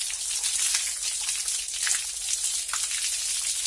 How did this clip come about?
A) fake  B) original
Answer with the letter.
B